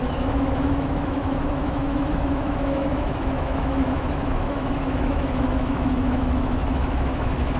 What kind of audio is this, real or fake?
fake